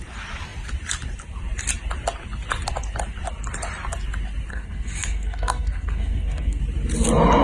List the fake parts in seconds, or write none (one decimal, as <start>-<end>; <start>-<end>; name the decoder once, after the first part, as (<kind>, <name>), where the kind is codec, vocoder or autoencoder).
4.5-6.6 (codec, SNAC)